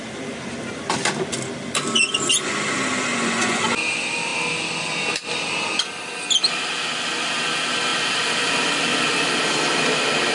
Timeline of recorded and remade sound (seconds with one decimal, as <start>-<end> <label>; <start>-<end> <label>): 0.0-3.1 recorded; 3.1-3.6 remade; 3.6-10.3 recorded